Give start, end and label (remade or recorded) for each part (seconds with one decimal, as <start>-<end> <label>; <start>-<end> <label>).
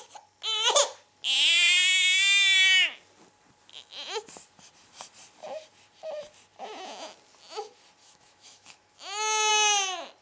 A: 0.0-3.7 recorded; 3.7-4.3 remade; 4.3-8.0 recorded; 8.0-9.5 remade; 9.5-10.2 recorded